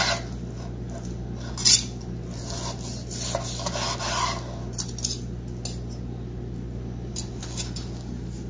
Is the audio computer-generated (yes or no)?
no